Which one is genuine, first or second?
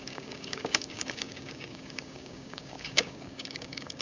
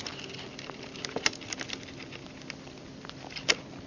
second